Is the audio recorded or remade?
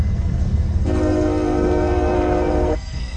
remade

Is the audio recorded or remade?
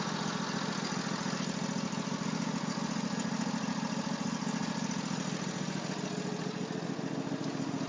recorded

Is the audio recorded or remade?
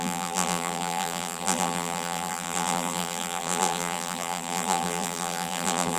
remade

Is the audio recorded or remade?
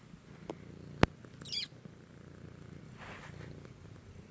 recorded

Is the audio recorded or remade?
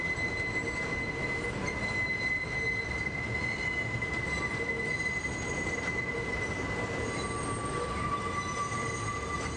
recorded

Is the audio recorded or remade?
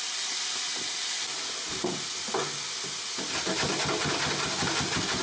recorded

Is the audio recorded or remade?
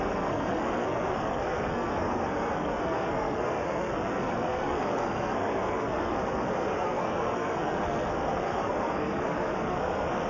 remade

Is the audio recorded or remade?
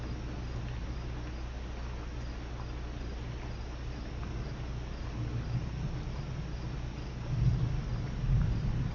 recorded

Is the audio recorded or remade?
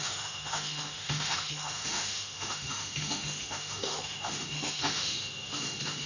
remade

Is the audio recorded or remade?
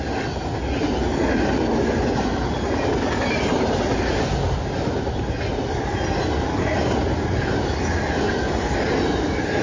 recorded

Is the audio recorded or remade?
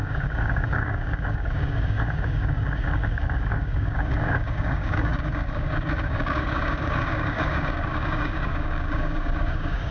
remade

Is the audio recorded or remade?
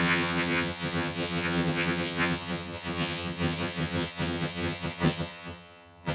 remade